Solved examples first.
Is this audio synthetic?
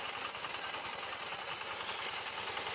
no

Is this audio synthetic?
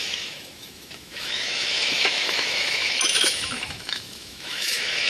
yes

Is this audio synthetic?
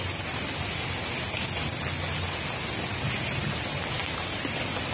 no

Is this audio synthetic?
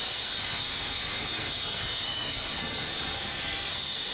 yes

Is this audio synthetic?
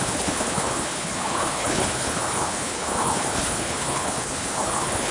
yes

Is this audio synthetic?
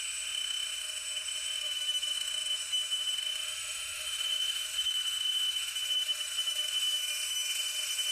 yes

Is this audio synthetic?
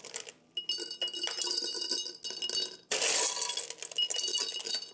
no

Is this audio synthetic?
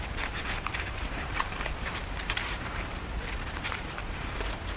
yes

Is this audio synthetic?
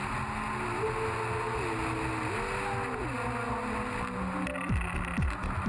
no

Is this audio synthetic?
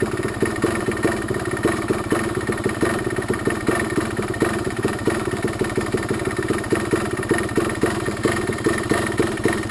yes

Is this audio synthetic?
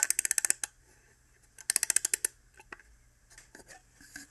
no